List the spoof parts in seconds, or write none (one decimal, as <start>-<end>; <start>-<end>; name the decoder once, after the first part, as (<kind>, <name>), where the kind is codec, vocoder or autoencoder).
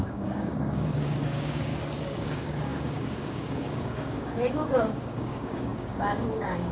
0.0-1.7 (codec, DAC); 2.2-6.7